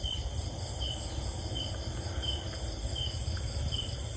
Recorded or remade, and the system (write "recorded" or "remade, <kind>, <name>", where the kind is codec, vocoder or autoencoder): remade, vocoder, BigVGAN v2